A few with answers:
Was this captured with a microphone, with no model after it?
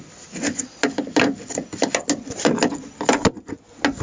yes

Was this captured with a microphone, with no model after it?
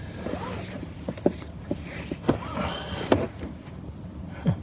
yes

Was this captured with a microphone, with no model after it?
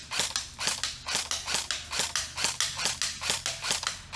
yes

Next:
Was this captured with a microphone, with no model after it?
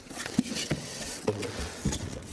no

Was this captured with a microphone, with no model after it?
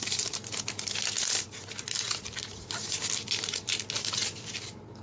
yes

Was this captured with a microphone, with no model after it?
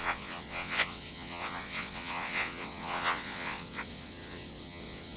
no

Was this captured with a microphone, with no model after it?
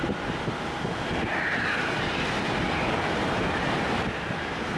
yes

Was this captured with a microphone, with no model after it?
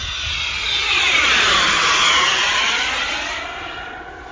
yes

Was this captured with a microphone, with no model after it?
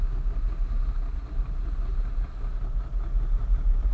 yes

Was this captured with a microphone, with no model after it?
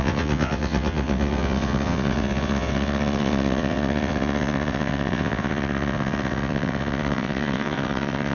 no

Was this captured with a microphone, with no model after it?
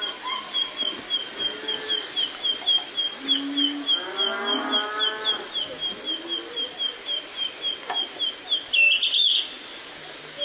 yes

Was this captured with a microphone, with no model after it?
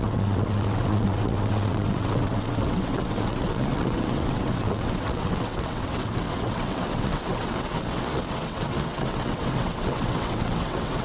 no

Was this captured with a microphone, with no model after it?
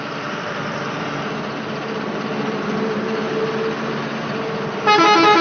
yes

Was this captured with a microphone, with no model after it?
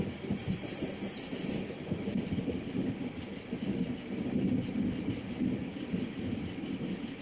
yes